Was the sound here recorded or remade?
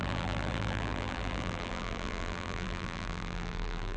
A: remade